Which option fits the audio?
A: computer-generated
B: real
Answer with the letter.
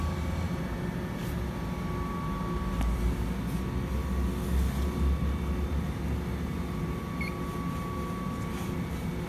B